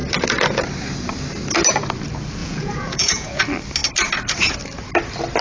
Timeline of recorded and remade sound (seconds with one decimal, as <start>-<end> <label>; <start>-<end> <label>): 0.0-2.4 recorded; 2.4-3.4 remade; 3.4-5.4 recorded